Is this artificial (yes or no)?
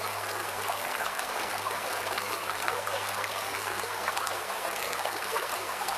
yes